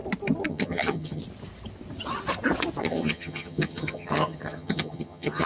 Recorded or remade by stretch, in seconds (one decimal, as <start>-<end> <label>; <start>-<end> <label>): 0.0-0.5 recorded; 0.5-1.2 remade; 1.2-2.8 recorded; 2.8-5.5 remade